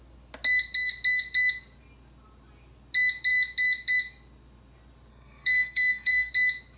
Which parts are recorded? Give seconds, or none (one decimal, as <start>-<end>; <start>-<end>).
0.0-5.1; 6.3-6.8